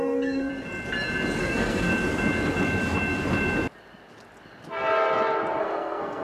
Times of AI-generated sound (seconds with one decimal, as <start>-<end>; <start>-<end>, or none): 0.0-0.5; 1.4-1.9; 5.6-6.2

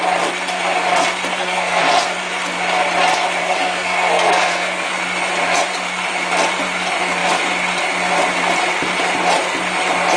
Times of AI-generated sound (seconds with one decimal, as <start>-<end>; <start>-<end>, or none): 1.3-1.8; 3.4-4.9

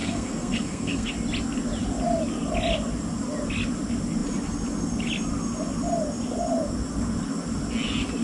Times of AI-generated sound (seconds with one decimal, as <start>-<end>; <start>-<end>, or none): 0.0-1.1

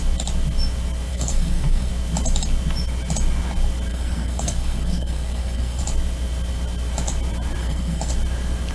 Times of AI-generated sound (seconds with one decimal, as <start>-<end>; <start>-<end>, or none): 1.1-1.9; 3.9-5.8; 7.6-8.1

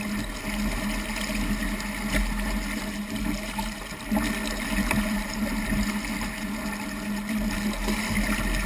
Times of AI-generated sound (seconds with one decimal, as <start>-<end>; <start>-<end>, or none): none

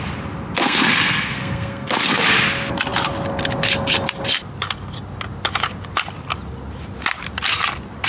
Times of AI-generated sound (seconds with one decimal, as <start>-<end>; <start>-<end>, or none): 0.6-2.2

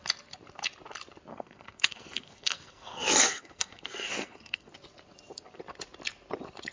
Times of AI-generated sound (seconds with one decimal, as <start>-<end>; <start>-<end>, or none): 1.3-4.7